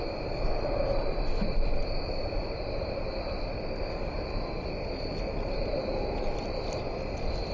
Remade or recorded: recorded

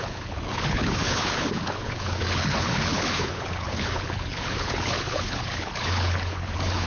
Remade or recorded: remade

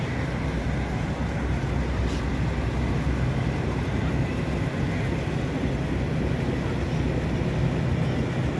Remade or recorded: recorded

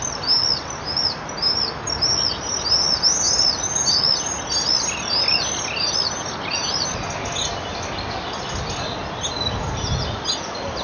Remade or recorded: recorded